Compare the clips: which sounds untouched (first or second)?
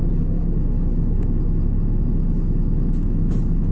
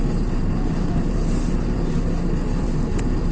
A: first